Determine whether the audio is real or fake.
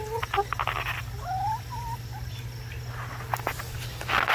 real